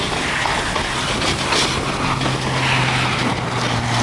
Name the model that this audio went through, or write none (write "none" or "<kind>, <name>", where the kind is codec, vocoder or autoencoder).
none